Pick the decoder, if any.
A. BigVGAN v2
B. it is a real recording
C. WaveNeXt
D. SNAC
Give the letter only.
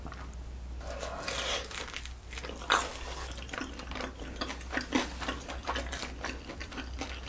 B